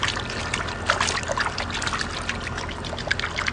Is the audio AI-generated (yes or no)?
no